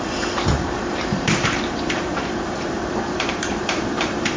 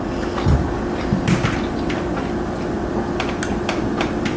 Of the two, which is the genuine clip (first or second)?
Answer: second